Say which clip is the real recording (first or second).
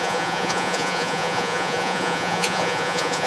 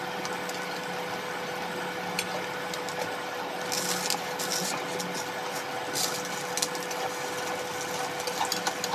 second